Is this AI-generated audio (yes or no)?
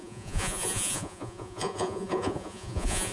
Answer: yes